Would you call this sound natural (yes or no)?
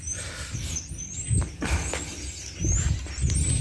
yes